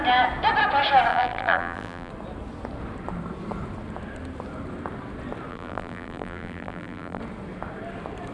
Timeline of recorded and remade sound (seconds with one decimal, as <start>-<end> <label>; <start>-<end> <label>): 0.0-1.1 recorded; 1.1-2.1 remade; 2.1-5.5 recorded; 5.5-7.2 remade; 7.2-8.3 recorded